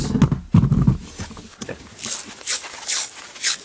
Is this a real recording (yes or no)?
yes